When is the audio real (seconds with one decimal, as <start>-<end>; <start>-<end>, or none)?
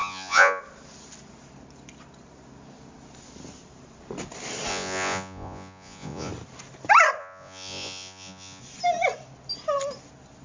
0.6-4.7; 6.3-7.2; 8.6-10.4